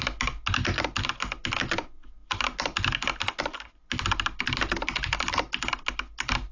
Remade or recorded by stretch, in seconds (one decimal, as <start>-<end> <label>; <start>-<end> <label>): 0.0-6.5 recorded